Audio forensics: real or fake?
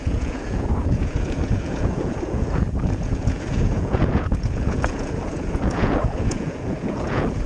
fake